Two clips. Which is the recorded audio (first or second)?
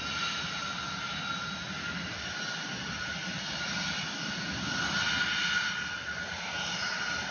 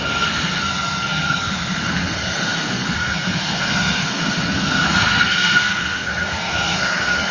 first